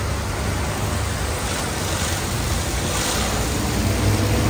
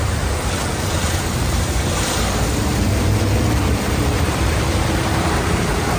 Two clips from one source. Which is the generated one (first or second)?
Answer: second